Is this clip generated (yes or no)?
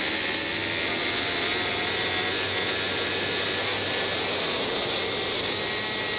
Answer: no